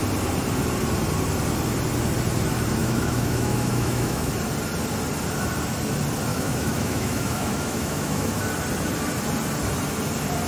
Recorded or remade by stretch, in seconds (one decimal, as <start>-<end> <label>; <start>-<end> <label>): 0.0-2.8 recorded; 2.8-4.3 remade; 4.3-6.3 recorded; 6.3-8.4 remade; 8.4-10.5 recorded